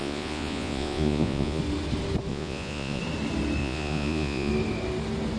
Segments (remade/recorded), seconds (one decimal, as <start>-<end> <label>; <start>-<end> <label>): 0.0-1.6 remade; 1.6-2.3 recorded; 2.3-3.0 remade; 3.0-3.6 recorded; 3.6-4.5 remade; 4.5-5.4 recorded